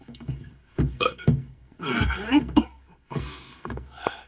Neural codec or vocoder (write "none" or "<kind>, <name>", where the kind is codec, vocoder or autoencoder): codec, SNAC